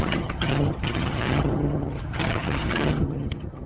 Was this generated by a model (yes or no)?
yes